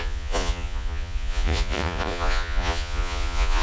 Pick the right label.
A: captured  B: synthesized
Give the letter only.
B